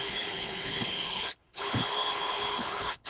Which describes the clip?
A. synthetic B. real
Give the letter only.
A